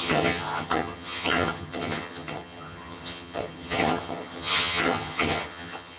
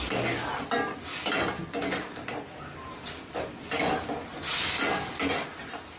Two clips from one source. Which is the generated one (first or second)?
first